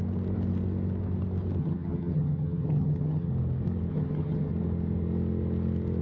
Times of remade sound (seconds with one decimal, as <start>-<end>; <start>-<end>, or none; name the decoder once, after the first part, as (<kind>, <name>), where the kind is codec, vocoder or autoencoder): 1.6-3.3 (vocoder, HiFi-GAN); 3.9-4.5